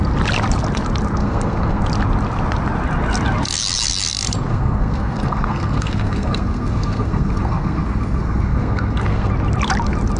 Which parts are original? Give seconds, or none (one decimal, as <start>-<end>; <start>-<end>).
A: 0.0-1.2; 1.8-4.5; 9.3-10.2